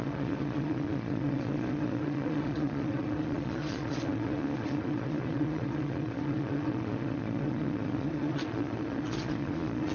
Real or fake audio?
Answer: fake